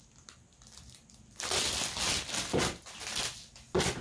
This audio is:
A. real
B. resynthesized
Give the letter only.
A